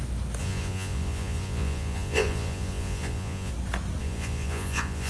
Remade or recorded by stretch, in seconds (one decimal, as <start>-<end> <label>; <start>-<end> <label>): 0.0-0.4 recorded; 0.4-3.5 remade; 3.5-4.0 recorded; 4.0-5.1 remade